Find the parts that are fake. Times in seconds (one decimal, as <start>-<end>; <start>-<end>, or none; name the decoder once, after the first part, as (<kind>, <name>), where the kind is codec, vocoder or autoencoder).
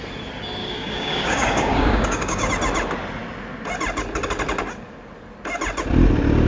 0.6-2.5 (codec, DAC)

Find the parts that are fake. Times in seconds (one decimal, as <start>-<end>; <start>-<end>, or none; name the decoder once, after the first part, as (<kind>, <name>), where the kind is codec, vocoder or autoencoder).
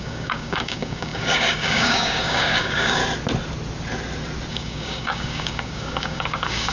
0.0-3.0 (codec, DAC); 4.5-6.7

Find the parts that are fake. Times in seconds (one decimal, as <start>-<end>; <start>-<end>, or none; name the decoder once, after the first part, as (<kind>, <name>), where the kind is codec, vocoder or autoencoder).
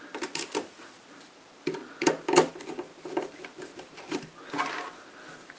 none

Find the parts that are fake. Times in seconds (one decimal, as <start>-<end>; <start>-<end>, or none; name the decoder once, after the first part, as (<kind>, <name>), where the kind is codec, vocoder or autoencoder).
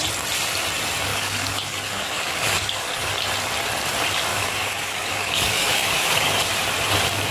1.1-3.1 (codec, DAC); 4.3-6.4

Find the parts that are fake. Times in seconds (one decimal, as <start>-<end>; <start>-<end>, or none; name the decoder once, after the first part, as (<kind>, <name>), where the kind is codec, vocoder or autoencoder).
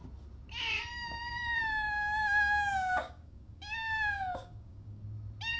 1.6-5.0 (codec, DAC)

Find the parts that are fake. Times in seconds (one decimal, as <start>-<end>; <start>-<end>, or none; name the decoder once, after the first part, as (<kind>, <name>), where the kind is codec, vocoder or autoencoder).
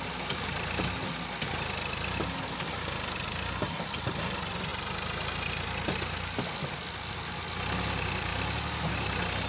none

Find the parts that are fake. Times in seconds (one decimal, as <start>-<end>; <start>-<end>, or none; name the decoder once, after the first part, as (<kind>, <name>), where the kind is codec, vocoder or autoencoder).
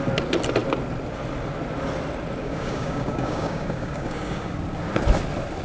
2.4-4.5 (codec, DAC)